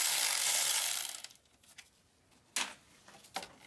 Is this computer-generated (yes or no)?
no